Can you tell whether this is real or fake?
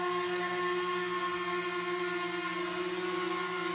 real